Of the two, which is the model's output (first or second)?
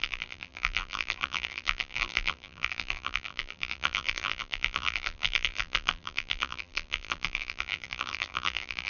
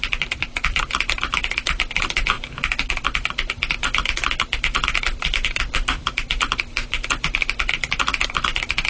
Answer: first